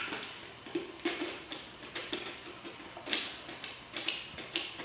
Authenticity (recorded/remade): recorded